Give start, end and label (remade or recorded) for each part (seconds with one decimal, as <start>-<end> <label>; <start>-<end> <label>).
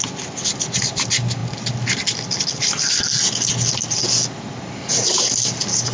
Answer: 0.0-5.9 recorded